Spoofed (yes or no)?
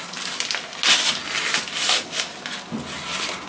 no